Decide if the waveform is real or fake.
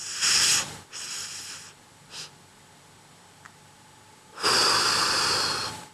real